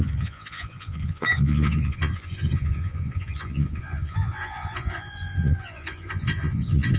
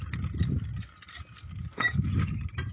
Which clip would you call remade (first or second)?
first